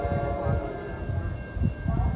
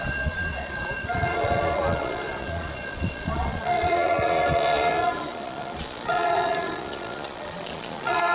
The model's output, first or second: second